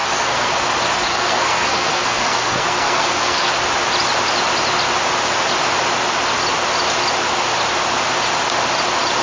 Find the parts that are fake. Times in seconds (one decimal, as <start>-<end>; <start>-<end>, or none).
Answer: 0.0-0.5; 1.1-3.5